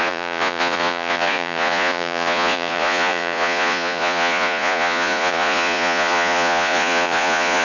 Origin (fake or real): fake